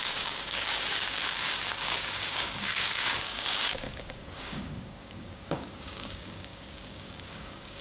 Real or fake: fake